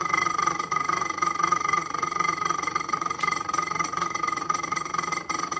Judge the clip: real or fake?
fake